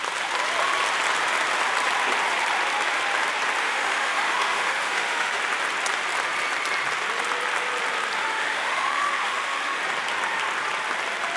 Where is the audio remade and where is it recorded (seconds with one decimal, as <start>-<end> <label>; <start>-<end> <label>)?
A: 0.0-3.6 recorded; 3.6-5.4 remade; 5.4-8.2 recorded; 8.2-9.8 remade; 9.8-11.4 recorded